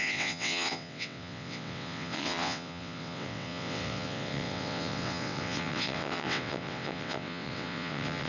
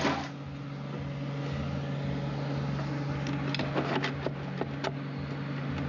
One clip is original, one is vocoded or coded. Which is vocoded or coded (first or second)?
first